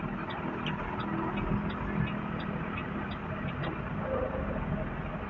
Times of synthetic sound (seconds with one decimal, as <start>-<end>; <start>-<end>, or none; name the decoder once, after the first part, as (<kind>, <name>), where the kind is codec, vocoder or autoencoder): none